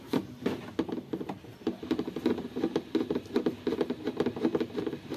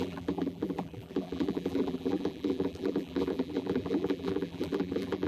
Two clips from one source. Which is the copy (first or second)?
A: second